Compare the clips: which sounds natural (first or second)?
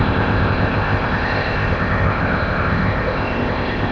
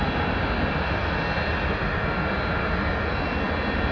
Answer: second